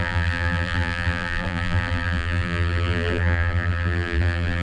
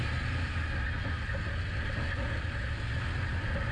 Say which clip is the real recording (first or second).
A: second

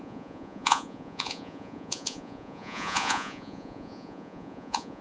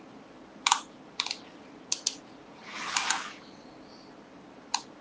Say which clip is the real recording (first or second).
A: second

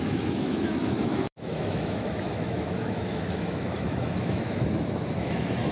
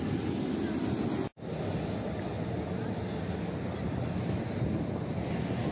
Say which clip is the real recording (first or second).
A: second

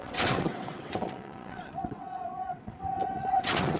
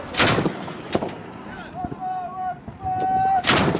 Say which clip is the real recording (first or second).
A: second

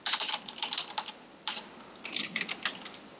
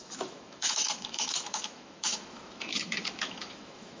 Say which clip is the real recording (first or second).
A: first